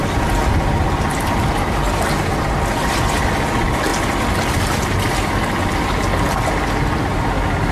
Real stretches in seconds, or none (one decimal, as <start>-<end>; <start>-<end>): 0.0-7.7